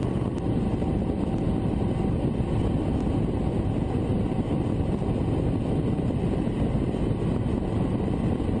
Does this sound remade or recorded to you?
recorded